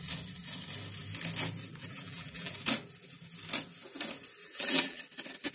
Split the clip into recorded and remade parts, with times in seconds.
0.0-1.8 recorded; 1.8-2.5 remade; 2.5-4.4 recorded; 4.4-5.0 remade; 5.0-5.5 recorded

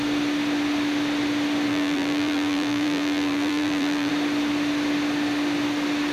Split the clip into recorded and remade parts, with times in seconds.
0.0-1.7 recorded; 1.7-4.1 remade; 4.1-6.1 recorded

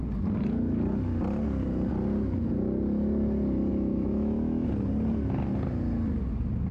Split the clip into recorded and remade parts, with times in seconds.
0.0-3.7 recorded; 3.7-4.7 remade; 4.7-6.7 recorded

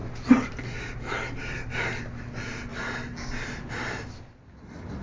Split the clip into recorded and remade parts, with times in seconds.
0.0-5.0 recorded

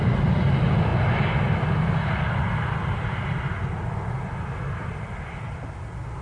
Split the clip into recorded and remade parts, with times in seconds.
0.0-6.2 recorded

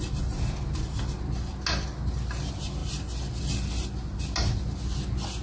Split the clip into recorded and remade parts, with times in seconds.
0.0-5.4 recorded

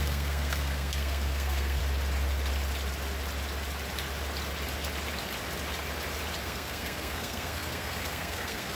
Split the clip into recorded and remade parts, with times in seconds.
0.0-1.8 remade; 1.8-6.4 recorded; 6.4-8.8 remade

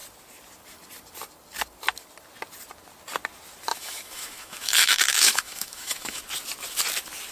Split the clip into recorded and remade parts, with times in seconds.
0.0-3.7 recorded; 3.7-6.2 remade; 6.2-7.3 recorded